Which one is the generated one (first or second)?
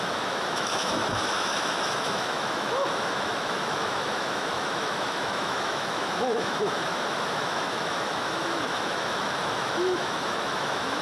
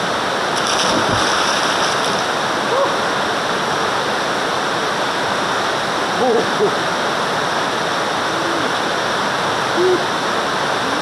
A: first